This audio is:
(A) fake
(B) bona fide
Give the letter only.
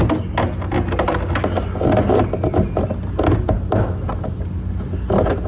B